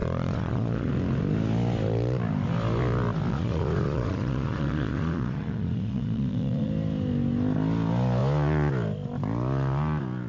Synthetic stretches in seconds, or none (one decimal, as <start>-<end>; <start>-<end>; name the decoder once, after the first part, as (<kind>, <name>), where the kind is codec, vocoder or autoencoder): 0.0-0.9 (vocoder, Vocos); 3.3-6.7